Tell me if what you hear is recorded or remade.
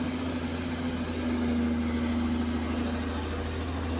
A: recorded